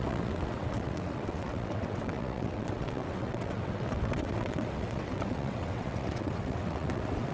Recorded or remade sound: remade